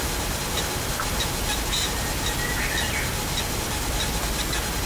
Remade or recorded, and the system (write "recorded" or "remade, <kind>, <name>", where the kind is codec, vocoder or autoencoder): recorded